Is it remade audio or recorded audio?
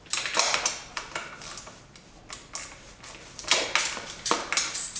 recorded